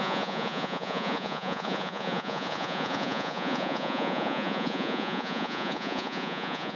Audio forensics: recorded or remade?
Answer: remade